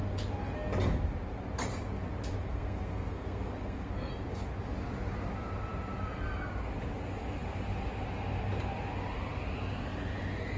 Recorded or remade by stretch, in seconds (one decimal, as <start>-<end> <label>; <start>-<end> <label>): 0.0-2.4 recorded; 2.4-4.1 remade; 4.1-10.6 recorded